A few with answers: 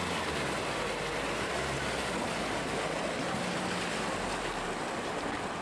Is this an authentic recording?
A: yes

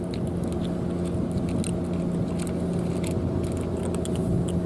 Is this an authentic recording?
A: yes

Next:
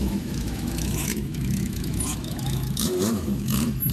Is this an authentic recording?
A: no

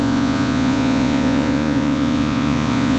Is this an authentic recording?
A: no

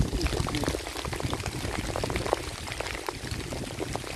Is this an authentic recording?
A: yes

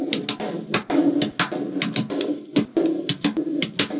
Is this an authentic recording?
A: yes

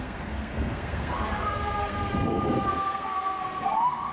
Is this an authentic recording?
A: no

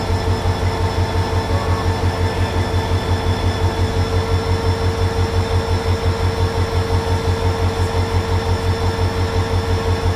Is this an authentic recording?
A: yes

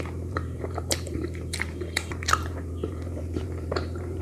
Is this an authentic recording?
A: no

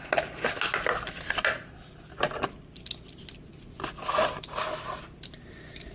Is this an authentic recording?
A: yes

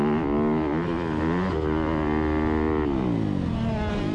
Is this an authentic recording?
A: yes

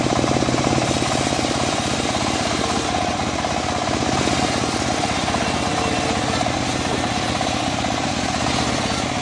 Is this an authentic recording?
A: yes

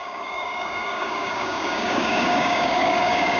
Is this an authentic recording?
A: no